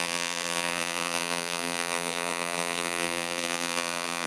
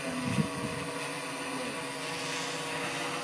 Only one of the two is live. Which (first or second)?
second